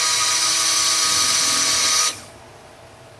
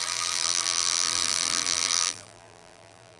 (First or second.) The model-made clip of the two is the second